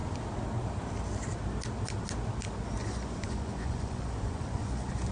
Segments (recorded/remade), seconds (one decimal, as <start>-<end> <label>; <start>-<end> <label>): 0.0-2.8 recorded; 2.8-5.1 remade